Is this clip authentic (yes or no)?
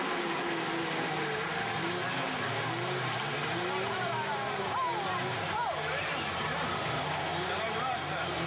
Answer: yes